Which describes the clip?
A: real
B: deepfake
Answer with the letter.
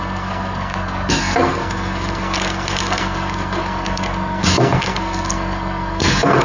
B